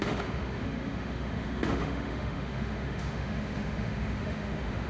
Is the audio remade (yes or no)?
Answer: yes